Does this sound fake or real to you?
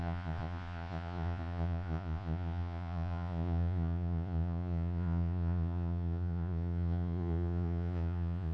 fake